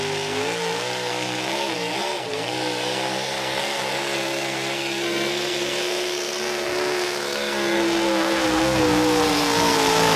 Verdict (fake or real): fake